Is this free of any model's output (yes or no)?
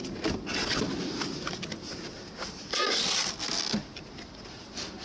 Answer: yes